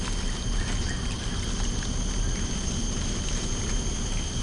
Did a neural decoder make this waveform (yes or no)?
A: no